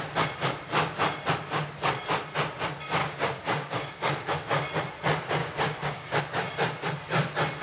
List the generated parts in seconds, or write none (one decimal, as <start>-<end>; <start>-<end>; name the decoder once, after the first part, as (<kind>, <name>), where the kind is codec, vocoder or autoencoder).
3.0-4.5 (codec, DAC); 5.4-6.2